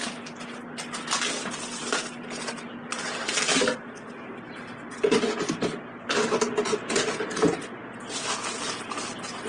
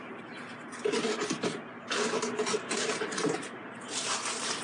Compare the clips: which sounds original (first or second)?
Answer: first